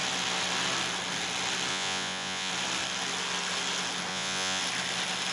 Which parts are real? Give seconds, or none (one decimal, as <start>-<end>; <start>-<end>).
0.0-1.7; 2.5-4.1; 4.6-5.3